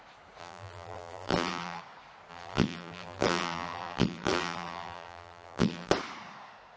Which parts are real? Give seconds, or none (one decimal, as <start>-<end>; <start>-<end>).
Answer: 0.0-0.4; 1.8-2.3; 5.9-6.8